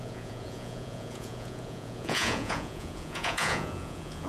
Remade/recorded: remade